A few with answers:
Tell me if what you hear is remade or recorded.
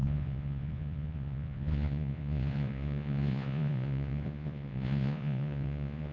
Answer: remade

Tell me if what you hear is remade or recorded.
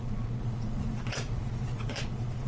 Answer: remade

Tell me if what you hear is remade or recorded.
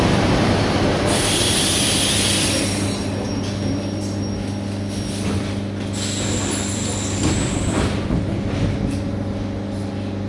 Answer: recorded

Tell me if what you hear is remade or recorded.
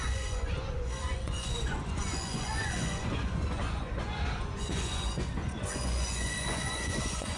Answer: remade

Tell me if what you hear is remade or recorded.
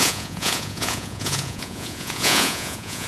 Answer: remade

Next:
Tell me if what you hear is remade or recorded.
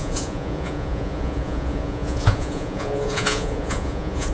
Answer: remade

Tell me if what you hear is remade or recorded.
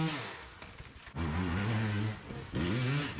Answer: recorded